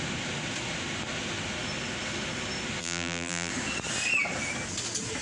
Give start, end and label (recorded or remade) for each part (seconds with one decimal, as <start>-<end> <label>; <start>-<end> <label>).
0.0-2.8 recorded; 2.8-3.5 remade; 3.5-5.2 recorded